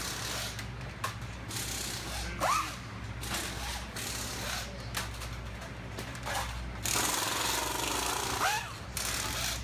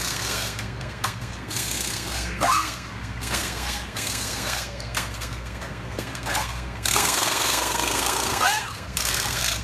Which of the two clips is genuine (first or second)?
first